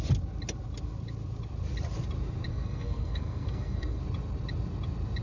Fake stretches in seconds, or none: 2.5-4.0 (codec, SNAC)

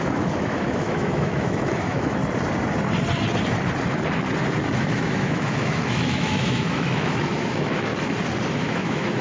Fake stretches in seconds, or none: 0.0-2.2 (autoencoder, DAC-VAE); 4.8-7.9; 8.5-9.2

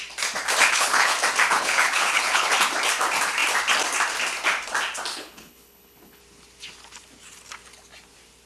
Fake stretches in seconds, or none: 0.6-1.1 (codec, HILCodec); 1.5-2.5; 5.1-6.2

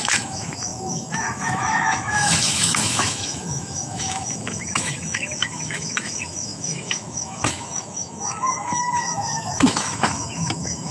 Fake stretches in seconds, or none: 0.0-10.9 (autoencoder, DAC-VAE)

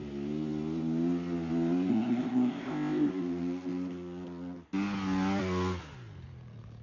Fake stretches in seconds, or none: 1.9-3.1 (codec, ZipCodec)